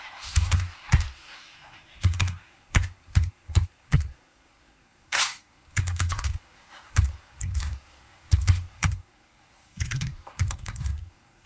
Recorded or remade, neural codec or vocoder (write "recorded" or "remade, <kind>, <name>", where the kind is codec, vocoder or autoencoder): remade, codec, SNAC